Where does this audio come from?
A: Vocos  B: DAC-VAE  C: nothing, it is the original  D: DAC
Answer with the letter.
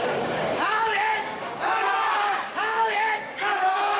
D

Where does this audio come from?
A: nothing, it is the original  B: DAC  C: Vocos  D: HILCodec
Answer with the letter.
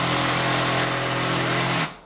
A